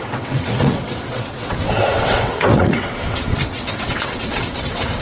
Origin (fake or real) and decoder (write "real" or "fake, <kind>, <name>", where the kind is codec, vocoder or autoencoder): fake, vocoder, WaveNeXt